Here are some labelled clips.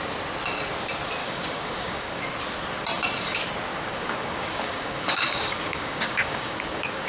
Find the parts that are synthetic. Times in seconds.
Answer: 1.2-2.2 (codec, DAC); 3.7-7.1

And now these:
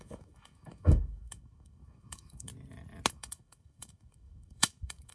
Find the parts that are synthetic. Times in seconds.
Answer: 0.0-2.5 (autoencoder, DAC-VAE); 3.1-5.1

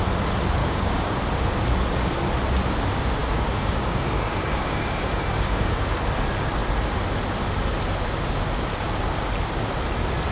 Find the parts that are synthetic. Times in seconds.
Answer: 0.6-1.2 (codec, DAC); 3.2-6.0

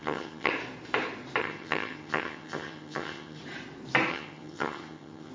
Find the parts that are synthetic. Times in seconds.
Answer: 0.0-0.5 (vocoder, HiFi-GAN); 1.4-3.4; 4.1-5.3

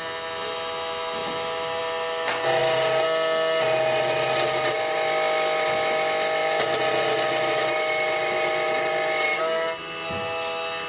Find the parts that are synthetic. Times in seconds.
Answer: none

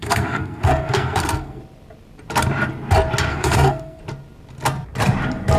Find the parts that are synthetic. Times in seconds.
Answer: 0.0-1.6 (codec, SNAC); 3.3-4.0

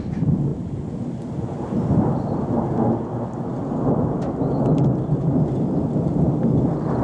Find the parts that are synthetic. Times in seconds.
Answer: none

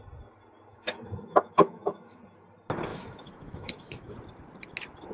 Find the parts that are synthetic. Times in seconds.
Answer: 0.7-2.2 (autoencoder, DAC-VAE); 2.9-4.1